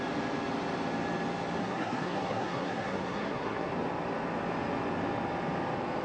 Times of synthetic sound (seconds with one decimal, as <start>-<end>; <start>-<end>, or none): 1.6-3.7